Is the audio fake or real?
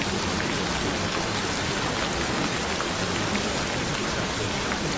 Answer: real